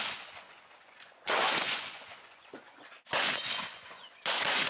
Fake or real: fake